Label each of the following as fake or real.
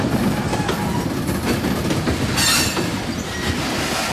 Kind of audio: real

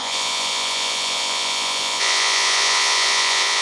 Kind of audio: fake